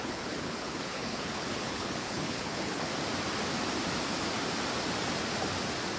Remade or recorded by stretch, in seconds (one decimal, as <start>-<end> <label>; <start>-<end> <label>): 0.0-2.9 remade; 2.9-6.0 recorded